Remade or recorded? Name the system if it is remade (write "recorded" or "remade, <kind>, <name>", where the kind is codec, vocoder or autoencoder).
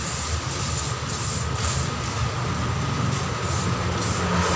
recorded